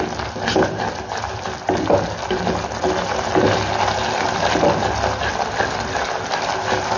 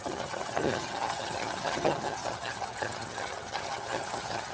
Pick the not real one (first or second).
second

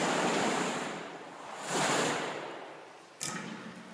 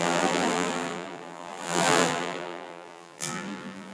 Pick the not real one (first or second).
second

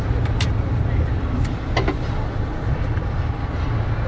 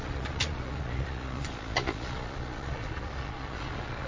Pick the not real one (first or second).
second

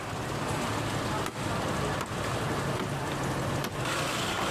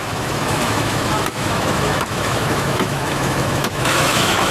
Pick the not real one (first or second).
second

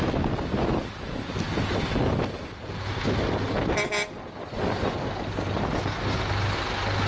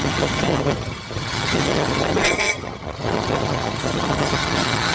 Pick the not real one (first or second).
second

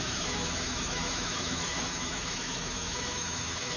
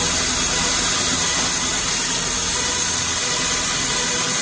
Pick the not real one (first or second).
first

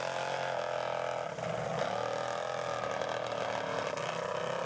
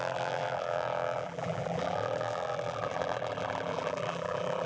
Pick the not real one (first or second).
second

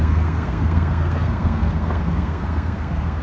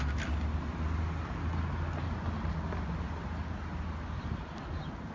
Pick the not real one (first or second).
first